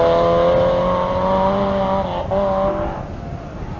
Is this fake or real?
real